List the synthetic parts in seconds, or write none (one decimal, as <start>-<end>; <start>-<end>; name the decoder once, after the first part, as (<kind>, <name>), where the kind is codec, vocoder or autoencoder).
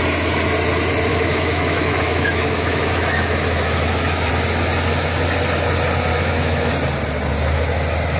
1.1-4.3 (autoencoder, DAC-VAE); 6.1-6.7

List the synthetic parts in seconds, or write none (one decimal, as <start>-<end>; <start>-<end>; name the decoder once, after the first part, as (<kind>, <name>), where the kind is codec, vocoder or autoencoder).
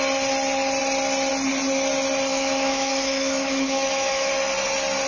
2.3-4.3 (autoencoder, DAC-VAE)